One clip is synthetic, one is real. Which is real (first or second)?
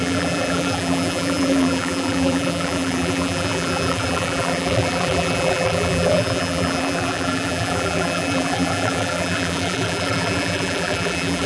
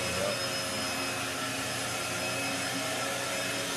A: second